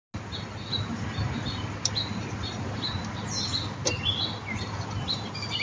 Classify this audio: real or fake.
real